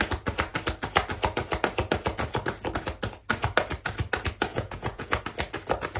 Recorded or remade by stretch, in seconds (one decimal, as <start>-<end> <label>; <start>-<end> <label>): 0.0-4.5 recorded; 4.5-5.2 remade; 5.2-6.0 recorded